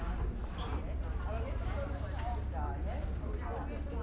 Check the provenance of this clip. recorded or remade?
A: recorded